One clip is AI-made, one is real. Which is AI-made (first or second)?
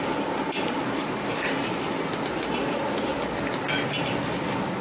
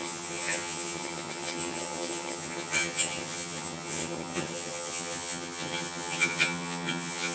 second